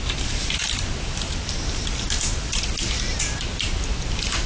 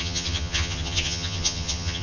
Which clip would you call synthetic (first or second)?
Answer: second